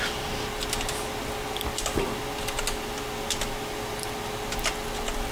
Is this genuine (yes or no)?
yes